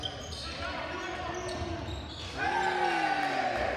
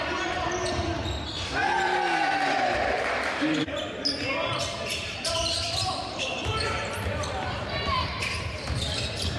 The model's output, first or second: second